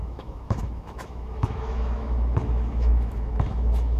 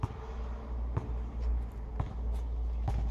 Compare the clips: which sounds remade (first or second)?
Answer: first